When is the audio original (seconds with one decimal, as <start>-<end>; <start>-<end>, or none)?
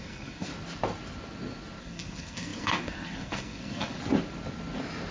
0.5-1.8; 4.0-5.1